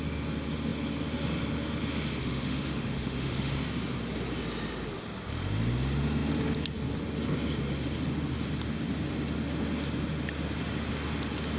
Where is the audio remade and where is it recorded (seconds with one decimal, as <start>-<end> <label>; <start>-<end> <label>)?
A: 0.0-2.2 recorded; 2.2-3.5 remade; 3.5-11.6 recorded